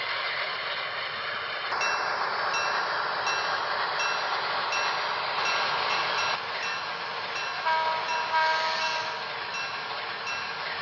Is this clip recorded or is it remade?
recorded